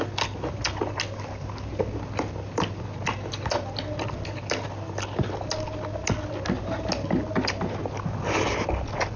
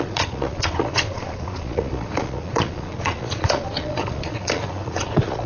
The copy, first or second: second